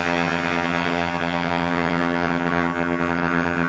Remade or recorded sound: remade